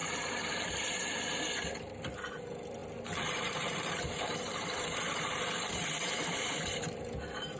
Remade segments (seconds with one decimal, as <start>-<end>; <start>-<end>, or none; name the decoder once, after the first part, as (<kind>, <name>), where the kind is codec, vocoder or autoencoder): 0.0-2.8 (vocoder, BigVGAN v2); 3.9-7.6